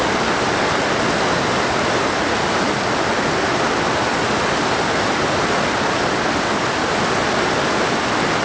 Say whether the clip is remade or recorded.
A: recorded